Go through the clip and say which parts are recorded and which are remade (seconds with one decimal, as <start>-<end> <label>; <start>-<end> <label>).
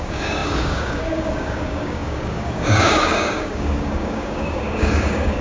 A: 0.0-5.4 remade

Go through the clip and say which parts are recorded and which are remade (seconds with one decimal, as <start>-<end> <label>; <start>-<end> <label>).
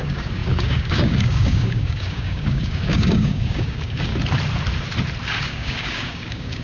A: 0.0-4.1 remade; 4.1-5.4 recorded; 5.4-6.6 remade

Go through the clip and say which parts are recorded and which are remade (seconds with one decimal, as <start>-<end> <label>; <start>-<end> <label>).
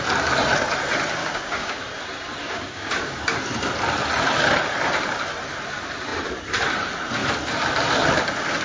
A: 0.0-1.2 recorded; 1.2-1.8 remade; 1.8-2.4 recorded; 2.4-3.3 remade; 3.3-8.6 recorded